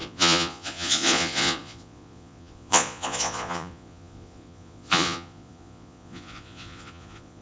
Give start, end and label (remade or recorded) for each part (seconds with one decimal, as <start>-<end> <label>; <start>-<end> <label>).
0.0-7.4 remade